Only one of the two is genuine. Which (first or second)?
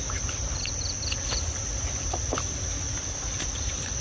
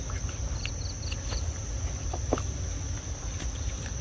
second